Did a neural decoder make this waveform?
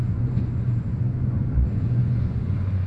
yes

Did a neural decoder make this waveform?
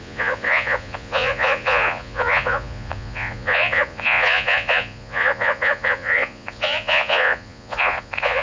yes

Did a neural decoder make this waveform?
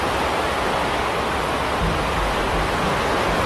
no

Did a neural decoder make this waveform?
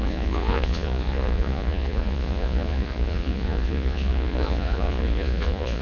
yes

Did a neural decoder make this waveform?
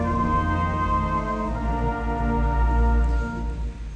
no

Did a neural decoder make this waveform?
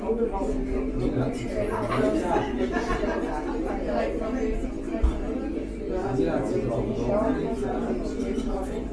no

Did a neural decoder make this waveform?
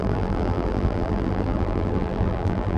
yes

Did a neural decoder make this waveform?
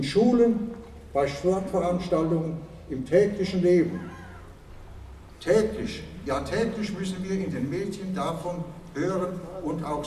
no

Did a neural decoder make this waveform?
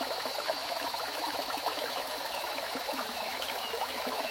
yes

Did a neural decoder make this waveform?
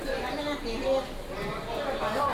no